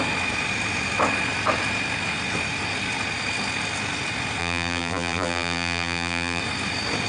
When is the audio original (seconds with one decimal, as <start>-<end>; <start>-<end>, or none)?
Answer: 0.0-4.4; 6.4-7.1